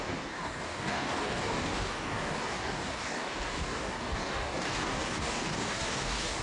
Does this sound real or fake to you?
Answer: fake